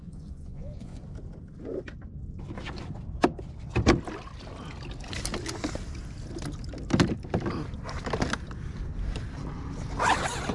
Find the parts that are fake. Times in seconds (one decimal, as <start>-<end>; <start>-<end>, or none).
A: 0.0-1.0